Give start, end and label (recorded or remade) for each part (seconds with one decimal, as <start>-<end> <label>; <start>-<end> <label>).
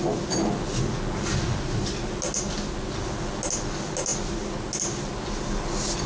0.0-6.1 recorded